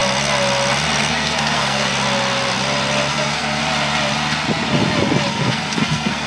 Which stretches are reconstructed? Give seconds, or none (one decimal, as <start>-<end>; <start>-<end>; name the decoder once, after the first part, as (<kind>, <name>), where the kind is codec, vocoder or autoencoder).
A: 1.0-1.9 (codec, SNAC); 3.1-3.6; 5.3-6.3